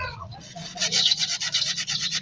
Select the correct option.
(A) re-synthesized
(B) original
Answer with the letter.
A